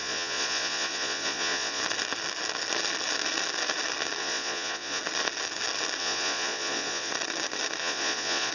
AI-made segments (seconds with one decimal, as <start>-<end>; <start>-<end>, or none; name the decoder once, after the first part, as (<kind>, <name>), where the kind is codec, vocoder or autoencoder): 0.0-1.8 (vocoder, Vocos); 4.2-5.0; 6.0-7.1; 7.8-8.5